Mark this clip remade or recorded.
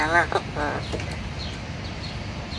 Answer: recorded